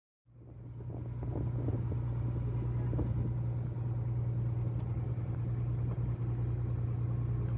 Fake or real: real